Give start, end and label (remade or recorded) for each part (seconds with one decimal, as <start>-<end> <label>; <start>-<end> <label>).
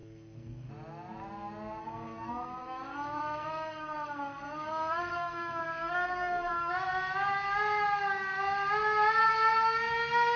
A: 0.0-0.7 remade; 0.7-1.8 recorded; 1.8-6.7 remade; 6.7-10.4 recorded